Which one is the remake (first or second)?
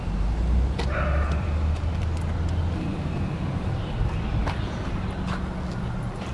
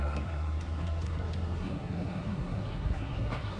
second